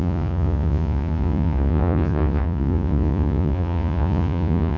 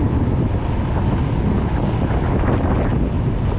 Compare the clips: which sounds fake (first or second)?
first